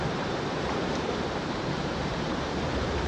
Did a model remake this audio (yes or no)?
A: yes